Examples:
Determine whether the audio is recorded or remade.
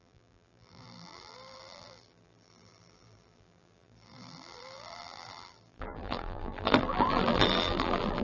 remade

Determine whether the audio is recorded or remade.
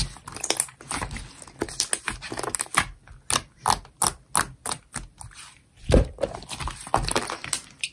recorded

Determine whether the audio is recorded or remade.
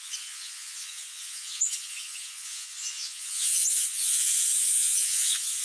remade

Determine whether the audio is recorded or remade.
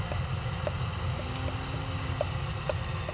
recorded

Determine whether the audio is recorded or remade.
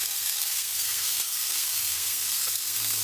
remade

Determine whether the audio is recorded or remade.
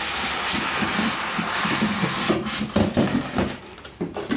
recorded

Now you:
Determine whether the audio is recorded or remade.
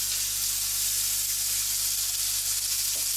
recorded